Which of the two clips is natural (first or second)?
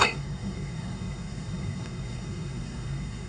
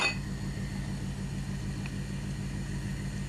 second